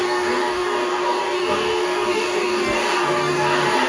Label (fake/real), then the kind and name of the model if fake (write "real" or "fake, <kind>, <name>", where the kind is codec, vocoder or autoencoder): fake, codec, DAC